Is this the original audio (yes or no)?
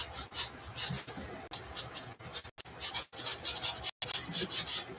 yes